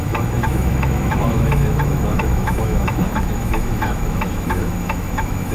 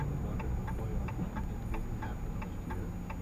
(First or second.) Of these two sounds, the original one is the second